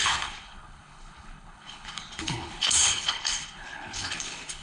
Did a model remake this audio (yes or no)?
yes